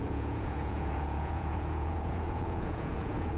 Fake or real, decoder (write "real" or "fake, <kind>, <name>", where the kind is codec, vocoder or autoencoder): fake, vocoder, Vocos